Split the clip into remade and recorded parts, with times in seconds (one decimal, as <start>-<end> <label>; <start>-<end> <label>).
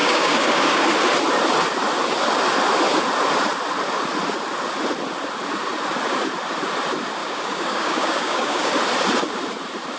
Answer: 0.0-0.8 remade; 0.8-7.2 recorded; 7.2-8.7 remade; 8.7-10.0 recorded